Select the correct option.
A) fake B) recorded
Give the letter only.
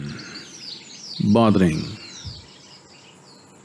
B